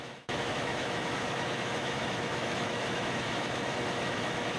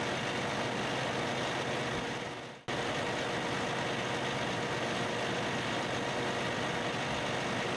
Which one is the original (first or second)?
second